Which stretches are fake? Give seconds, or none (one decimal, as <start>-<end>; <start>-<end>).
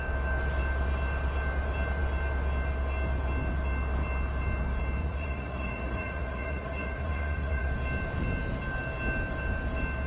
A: 5.0-7.7